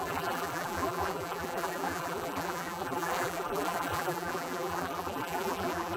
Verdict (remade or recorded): remade